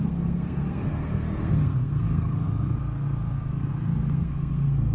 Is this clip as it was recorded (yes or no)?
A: no